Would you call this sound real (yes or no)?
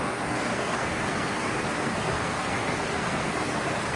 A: no